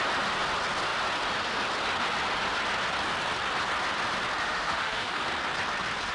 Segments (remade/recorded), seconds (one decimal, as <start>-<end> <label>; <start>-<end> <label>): 0.0-4.4 recorded; 4.4-5.2 remade; 5.2-6.1 recorded